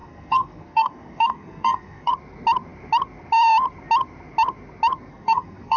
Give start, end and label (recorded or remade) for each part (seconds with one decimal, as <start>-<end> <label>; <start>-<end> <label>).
0.0-2.1 remade; 2.1-5.1 recorded; 5.1-5.8 remade

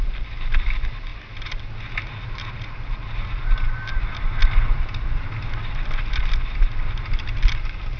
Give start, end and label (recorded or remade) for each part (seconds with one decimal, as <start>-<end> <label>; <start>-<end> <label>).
0.0-8.0 recorded